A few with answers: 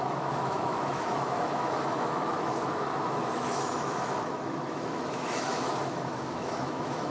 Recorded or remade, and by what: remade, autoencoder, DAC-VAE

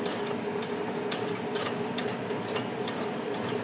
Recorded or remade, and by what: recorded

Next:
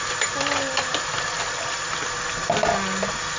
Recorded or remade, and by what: recorded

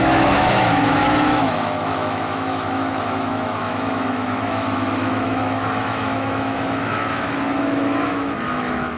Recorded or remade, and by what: remade, autoencoder, DAC-VAE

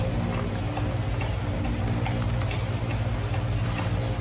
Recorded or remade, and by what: recorded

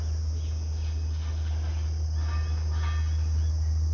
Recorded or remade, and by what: recorded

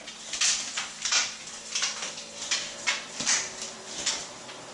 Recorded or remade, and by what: recorded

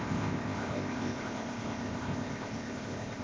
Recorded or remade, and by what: remade, codec, ZipCodec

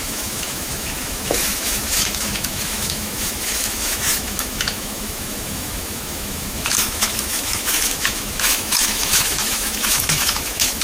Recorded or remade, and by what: remade, autoencoder, DAC-VAE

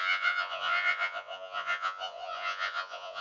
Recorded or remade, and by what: remade, vocoder, Vocos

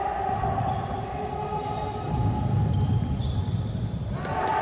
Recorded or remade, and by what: recorded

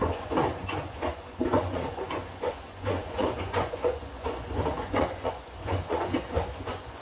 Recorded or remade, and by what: remade, vocoder, Vocos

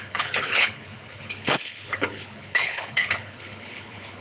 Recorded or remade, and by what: remade, codec, HILCodec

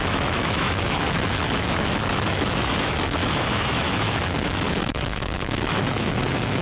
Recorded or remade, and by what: remade, autoencoder, DAC-VAE